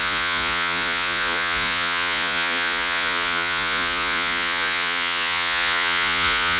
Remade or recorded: remade